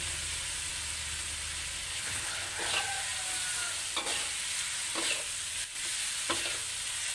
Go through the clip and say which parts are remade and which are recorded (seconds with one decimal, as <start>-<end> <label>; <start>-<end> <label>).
0.0-1.9 recorded; 1.9-2.6 remade; 2.6-7.1 recorded